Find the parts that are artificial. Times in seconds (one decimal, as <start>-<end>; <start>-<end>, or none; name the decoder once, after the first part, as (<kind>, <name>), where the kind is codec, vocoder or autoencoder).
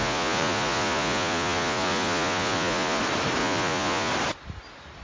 0.0-3.0 (vocoder, Vocos); 3.4-4.1